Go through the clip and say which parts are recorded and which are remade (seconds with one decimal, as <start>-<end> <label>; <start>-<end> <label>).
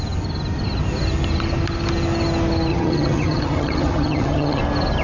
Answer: 0.0-2.7 recorded; 2.7-4.6 remade; 4.6-5.0 recorded